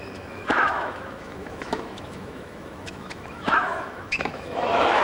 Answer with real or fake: fake